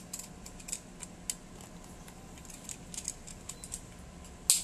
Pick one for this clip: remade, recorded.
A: recorded